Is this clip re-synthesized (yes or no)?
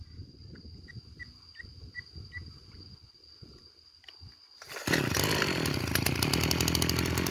no